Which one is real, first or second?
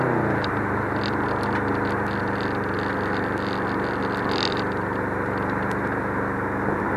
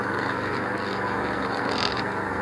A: first